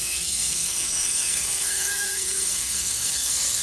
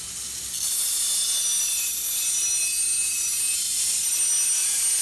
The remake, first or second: first